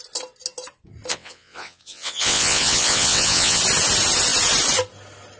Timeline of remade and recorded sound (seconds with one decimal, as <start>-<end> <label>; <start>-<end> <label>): 0.0-1.1 recorded; 1.1-3.6 remade; 3.6-5.4 recorded